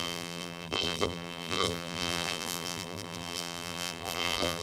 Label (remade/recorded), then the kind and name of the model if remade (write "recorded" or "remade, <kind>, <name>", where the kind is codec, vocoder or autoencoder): remade, vocoder, BigVGAN v2